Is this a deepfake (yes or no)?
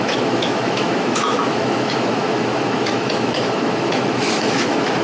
yes